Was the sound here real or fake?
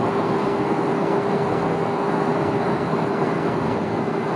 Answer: fake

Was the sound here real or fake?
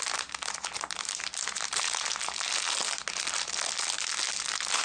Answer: real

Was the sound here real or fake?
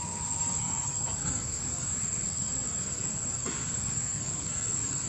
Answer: fake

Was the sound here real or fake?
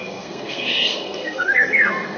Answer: fake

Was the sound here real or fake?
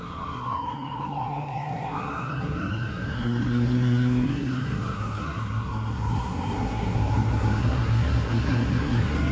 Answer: fake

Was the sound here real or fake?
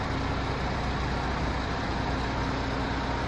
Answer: real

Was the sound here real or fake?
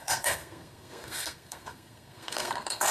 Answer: fake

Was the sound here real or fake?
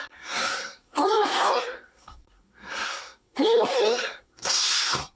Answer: fake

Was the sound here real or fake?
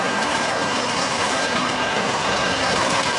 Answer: fake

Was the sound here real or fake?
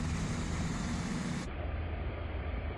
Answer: real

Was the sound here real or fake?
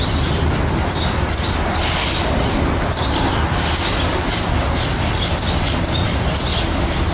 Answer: real